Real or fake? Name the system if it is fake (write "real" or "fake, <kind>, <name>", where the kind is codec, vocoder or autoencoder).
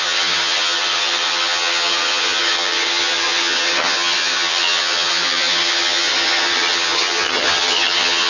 fake, vocoder, HiFi-GAN